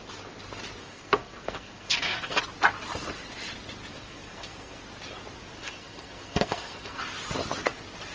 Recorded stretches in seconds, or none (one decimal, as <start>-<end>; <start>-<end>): 0.0-0.8; 2.4-3.9; 4.8-5.6; 7.0-8.1